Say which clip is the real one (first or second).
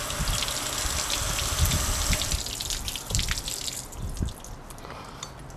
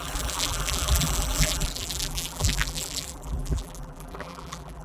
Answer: first